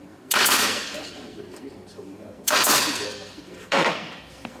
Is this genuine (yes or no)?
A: no